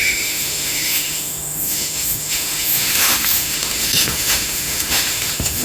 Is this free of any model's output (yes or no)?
no